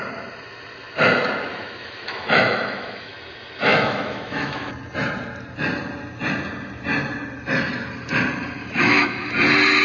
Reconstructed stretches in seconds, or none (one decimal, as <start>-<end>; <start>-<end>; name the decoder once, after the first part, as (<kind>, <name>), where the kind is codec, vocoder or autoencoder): 1.5-3.1 (autoencoder, DAC-VAE); 3.7-4.7; 8.6-9.3